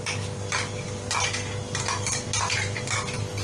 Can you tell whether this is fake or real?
real